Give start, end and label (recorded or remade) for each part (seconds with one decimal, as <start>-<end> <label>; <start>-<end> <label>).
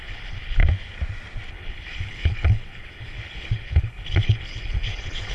0.0-0.6 remade; 0.6-1.5 recorded; 1.5-5.3 remade